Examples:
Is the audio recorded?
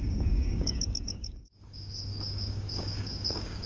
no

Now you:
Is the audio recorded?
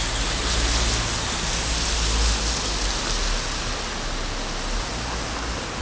yes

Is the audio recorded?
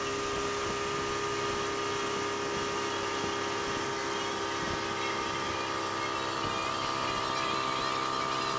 yes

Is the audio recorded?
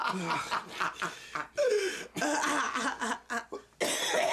yes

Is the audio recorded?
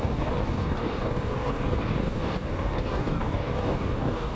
no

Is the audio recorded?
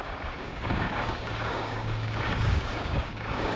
no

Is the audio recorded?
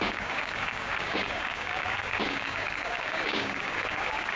no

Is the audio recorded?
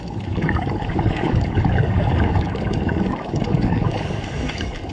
no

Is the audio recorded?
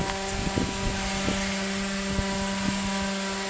yes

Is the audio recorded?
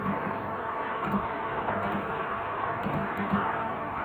no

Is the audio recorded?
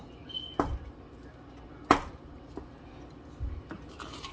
yes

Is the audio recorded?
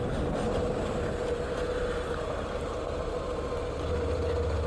yes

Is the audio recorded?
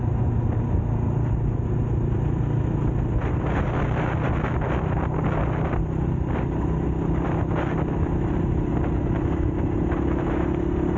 yes